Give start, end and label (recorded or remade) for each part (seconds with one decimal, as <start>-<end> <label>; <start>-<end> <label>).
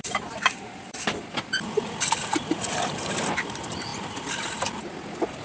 0.0-5.4 remade